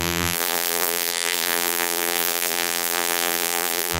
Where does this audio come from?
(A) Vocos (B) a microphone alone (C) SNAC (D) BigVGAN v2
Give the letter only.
D